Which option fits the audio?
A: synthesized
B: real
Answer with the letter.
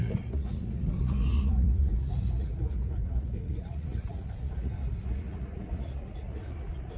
A